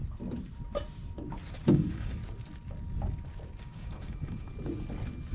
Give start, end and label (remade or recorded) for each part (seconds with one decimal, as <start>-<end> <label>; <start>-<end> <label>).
0.0-1.7 recorded; 1.7-2.2 remade; 2.2-3.6 recorded; 3.6-4.5 remade; 4.5-5.3 recorded